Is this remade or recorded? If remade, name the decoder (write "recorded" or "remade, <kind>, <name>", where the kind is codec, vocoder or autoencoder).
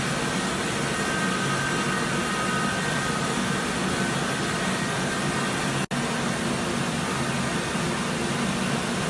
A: recorded